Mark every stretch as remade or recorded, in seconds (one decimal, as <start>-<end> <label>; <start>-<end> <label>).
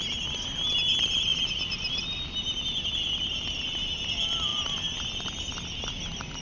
0.0-6.4 recorded